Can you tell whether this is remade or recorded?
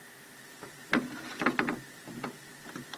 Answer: recorded